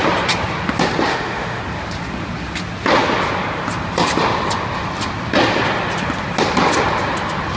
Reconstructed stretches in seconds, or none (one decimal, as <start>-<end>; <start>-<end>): 1.1-1.6